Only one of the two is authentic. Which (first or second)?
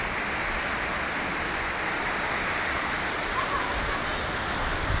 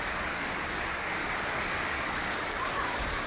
first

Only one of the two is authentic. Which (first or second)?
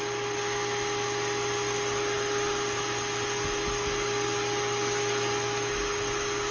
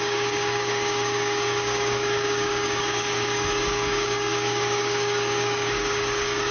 first